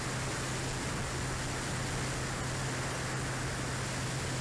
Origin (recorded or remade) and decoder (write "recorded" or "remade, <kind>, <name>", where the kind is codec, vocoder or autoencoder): recorded